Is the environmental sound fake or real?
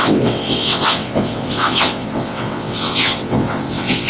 fake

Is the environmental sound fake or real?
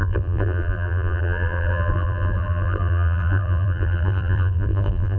fake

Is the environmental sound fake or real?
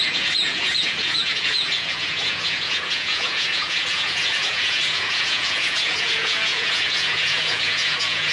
fake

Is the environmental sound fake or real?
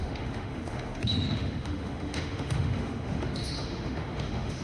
fake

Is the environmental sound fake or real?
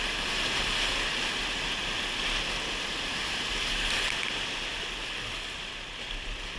real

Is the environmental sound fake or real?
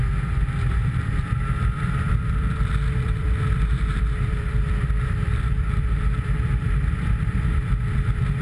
fake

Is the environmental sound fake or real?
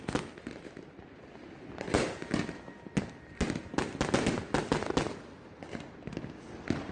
real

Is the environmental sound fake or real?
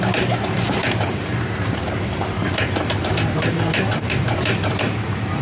fake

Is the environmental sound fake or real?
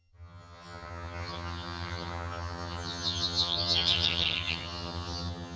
fake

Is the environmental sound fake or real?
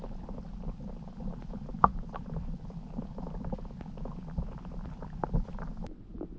real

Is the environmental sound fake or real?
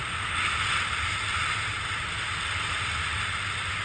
real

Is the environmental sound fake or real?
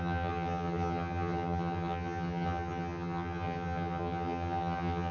fake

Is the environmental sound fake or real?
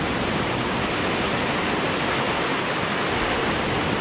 real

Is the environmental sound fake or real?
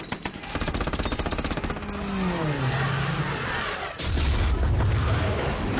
real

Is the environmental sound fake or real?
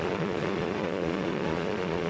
fake